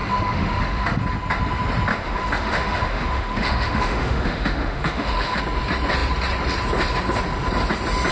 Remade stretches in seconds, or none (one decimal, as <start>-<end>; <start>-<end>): 0.0-1.0; 1.9-5.4